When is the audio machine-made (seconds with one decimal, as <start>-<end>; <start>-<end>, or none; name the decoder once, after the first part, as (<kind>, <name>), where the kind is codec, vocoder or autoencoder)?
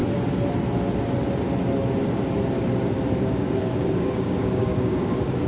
3.3-5.5 (codec, DAC)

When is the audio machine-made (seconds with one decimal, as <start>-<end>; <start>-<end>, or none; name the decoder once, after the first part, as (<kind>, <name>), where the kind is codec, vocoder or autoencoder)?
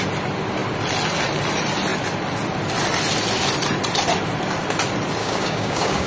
5.2-6.1 (codec, DAC)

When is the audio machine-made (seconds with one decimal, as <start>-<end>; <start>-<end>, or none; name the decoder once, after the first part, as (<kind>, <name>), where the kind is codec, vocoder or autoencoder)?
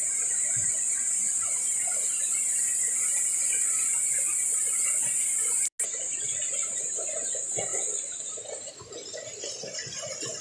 none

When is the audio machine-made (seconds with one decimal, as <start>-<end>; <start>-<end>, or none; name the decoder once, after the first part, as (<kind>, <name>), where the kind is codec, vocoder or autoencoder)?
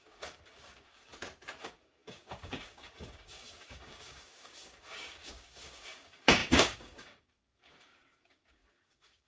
0.0-1.1 (codec, DAC); 1.6-9.3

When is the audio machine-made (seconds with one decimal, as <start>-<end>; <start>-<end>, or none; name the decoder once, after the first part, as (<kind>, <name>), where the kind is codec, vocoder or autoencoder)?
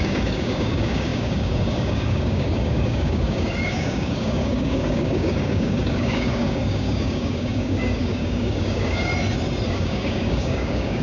0.0-9.1 (codec, DAC); 9.7-11.0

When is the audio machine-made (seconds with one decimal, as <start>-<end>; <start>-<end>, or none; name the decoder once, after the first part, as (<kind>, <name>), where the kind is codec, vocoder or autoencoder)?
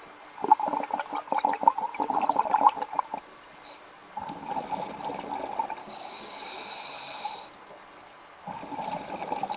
5.8-6.5 (codec, DAC)